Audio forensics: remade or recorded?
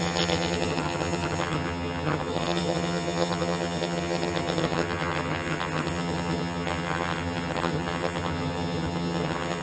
remade